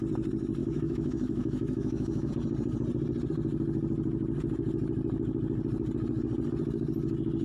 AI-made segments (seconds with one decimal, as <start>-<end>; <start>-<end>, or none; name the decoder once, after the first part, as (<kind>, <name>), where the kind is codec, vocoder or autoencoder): 0.6-2.3 (autoencoder, DAC-VAE)